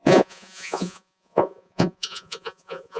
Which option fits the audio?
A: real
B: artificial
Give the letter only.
B